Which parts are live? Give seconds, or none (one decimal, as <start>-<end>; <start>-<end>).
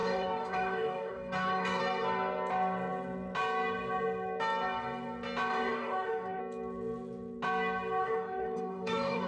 1.8-5.5; 6.4-8.0